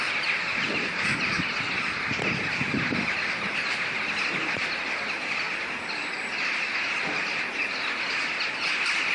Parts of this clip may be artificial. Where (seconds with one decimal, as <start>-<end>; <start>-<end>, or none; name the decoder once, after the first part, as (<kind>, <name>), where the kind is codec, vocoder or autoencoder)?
none